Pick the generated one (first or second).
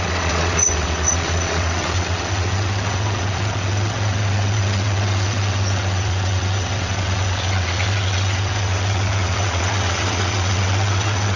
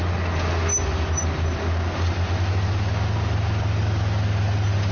first